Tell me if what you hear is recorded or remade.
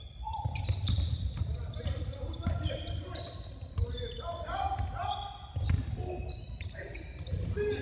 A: recorded